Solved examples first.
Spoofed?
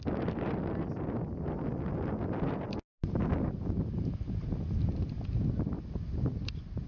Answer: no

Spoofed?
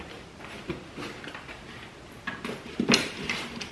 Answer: no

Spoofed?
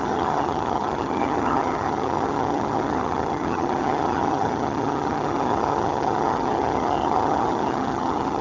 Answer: yes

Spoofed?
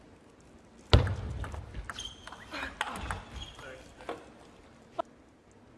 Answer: no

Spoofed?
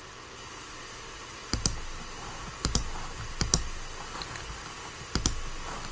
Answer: no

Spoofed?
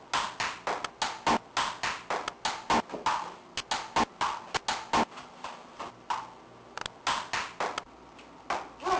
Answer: no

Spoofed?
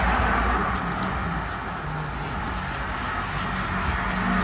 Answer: no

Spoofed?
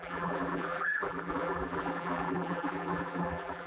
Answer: yes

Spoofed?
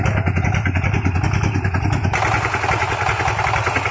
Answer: no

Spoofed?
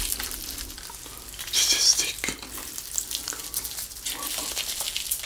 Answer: no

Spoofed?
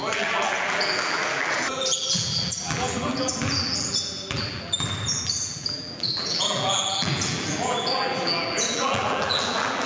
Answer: yes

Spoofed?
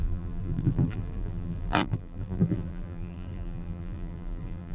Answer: yes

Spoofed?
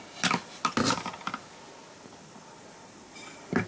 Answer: no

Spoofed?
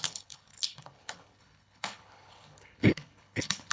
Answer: yes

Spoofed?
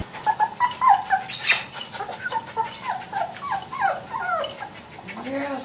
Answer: no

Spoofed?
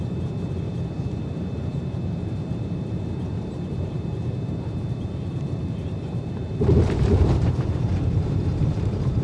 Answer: yes